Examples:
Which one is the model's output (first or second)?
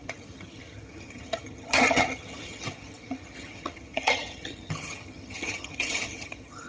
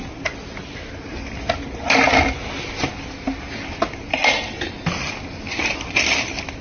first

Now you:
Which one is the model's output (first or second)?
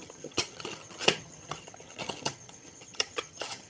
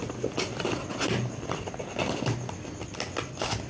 first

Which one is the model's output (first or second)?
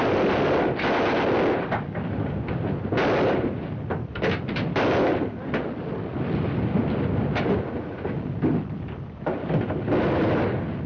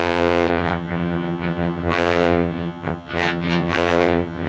second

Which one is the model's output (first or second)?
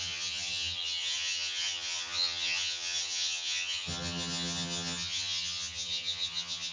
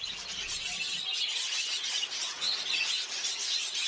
first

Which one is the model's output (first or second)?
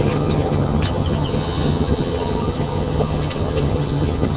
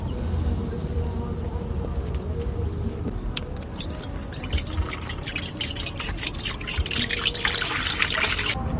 first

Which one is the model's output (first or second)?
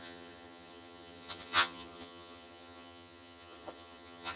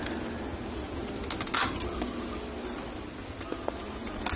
first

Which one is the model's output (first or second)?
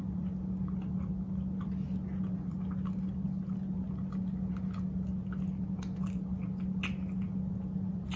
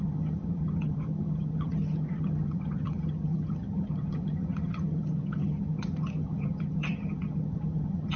second